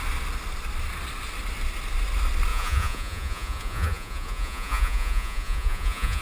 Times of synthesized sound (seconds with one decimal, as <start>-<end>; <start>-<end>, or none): 2.5-6.2